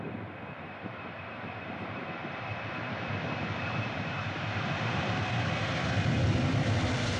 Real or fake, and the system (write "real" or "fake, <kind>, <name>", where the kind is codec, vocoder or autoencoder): fake, vocoder, BigVGAN v2